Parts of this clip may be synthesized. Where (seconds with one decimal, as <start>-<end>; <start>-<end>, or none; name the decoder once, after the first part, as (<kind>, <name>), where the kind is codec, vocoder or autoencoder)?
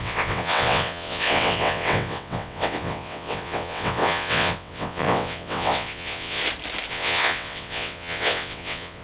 0.0-6.4 (vocoder, WaveNeXt); 6.9-9.0